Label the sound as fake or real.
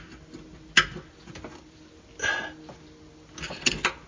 real